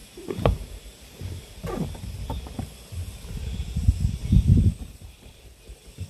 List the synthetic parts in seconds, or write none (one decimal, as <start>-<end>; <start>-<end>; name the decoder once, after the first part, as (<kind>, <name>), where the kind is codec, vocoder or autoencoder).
0.0-2.0 (vocoder, BigVGAN v2); 4.2-5.3